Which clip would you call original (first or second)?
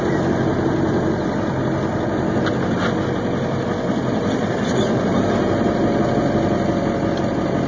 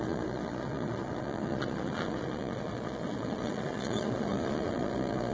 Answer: first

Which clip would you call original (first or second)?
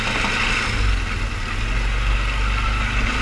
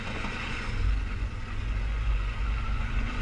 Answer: first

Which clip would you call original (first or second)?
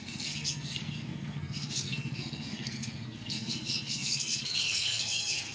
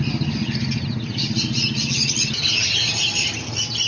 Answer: second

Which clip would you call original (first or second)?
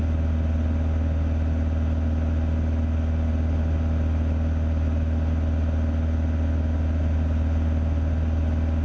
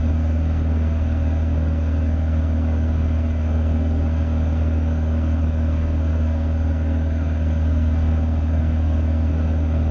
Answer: first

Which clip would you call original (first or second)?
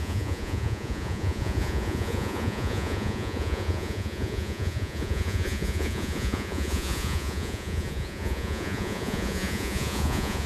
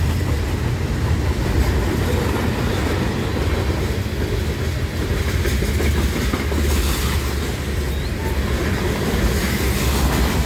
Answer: second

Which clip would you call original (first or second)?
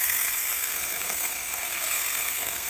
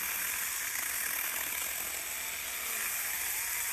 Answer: second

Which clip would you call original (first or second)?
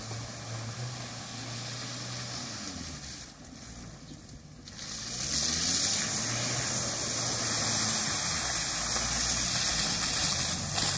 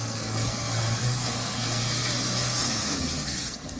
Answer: first